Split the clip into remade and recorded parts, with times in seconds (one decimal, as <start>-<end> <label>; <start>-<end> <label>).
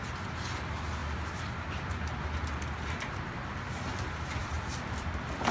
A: 0.0-1.0 recorded; 1.0-1.9 remade; 1.9-4.4 recorded; 4.4-5.5 remade